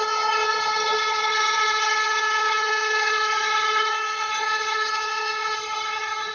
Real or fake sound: fake